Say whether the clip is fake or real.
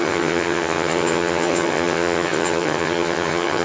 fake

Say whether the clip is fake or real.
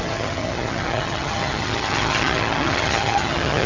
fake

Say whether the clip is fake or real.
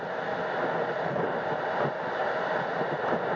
real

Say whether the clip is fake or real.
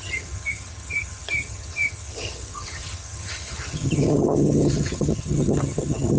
fake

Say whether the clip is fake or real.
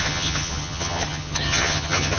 fake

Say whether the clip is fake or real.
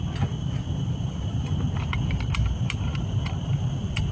real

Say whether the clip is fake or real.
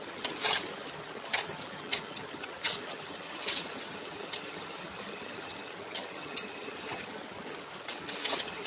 fake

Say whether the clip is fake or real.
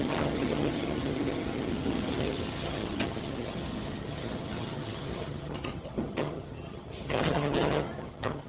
fake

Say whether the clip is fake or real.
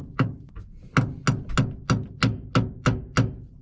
real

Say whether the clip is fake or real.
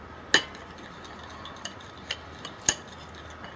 real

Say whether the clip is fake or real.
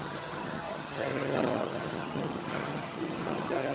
fake